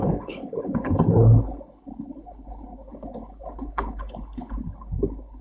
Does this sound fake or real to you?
fake